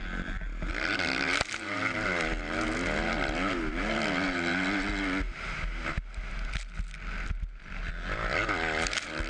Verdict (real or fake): real